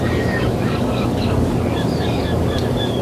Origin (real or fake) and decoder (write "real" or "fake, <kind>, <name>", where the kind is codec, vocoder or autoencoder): fake, codec, DAC